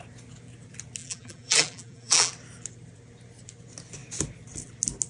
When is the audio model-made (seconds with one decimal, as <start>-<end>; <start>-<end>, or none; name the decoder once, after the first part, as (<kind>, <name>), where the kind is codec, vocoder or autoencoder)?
1.0-2.3 (vocoder, BigVGAN v2)